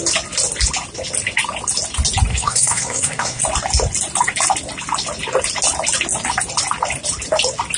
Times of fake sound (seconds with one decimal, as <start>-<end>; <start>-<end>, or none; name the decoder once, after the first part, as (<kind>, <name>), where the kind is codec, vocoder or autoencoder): 2.3-3.4 (codec, SNAC)

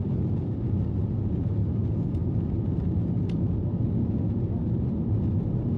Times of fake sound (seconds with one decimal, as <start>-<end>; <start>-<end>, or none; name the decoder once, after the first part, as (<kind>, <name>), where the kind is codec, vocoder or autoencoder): none

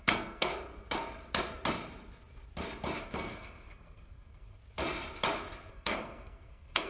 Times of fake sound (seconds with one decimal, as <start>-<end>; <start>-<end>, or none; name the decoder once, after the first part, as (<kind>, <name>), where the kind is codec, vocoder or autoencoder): 0.0-0.5 (codec, SNAC); 3.0-4.6; 5.7-6.9

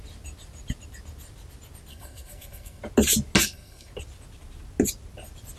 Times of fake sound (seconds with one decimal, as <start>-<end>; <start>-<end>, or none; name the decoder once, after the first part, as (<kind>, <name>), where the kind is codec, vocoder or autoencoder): 1.9-2.8 (codec, SNAC); 3.4-3.9

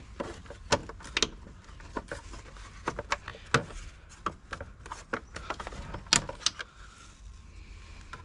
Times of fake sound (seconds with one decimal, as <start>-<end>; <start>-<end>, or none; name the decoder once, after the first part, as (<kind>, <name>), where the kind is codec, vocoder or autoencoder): none